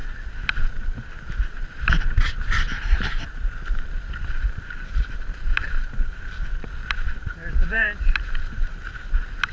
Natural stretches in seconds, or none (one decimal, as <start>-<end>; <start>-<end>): 0.0-4.3; 6.5-7.2; 8.8-9.5